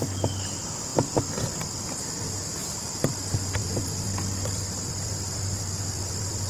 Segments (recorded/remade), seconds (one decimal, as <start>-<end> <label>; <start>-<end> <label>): 0.0-3.6 recorded; 3.6-6.5 remade